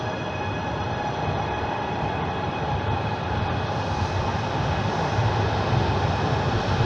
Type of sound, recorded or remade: recorded